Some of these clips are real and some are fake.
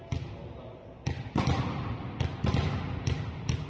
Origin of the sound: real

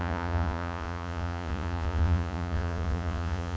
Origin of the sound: fake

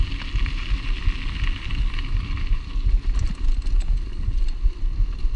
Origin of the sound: real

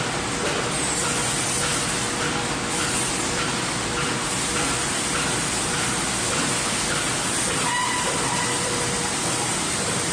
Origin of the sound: real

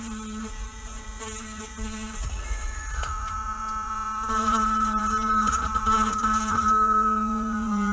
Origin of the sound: fake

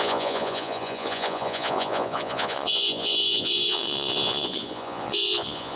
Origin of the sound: fake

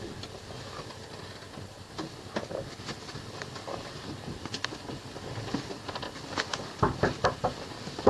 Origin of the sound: real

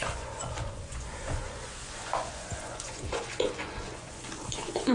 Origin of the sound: fake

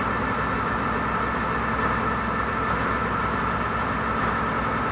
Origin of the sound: real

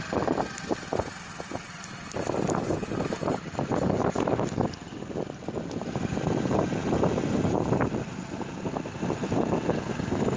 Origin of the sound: real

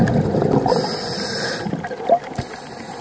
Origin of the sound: real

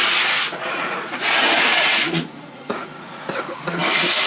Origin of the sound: fake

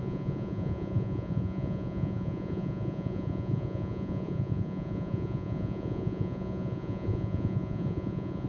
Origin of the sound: fake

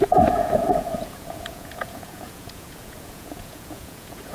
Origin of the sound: fake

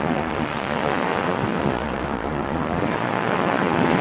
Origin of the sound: fake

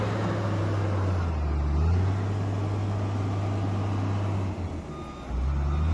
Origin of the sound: real